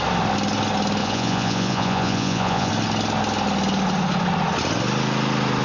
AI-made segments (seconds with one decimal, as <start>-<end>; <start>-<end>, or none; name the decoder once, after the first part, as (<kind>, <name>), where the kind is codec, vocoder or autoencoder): 1.0-2.7 (vocoder, Vocos)